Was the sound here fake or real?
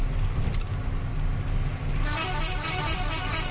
real